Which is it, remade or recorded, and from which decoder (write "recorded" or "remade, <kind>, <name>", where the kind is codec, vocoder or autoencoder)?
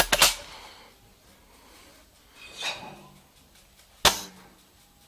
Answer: recorded